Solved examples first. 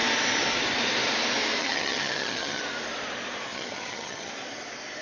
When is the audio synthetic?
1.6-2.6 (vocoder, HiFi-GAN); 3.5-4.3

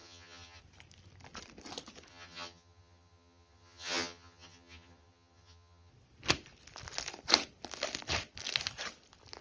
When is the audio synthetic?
0.0-0.6 (vocoder, HiFi-GAN); 2.1-5.9

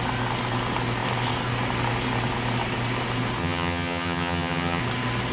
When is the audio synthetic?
3.4-4.8 (vocoder, HiFi-GAN)

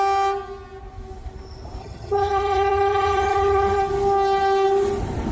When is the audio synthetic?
1.8-3.8 (vocoder, HiFi-GAN)

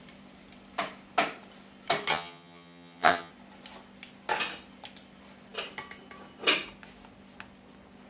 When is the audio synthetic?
2.1-3.3 (vocoder, HiFi-GAN)

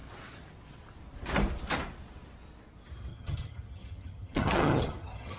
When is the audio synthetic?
3.1-5.4 (vocoder, HiFi-GAN)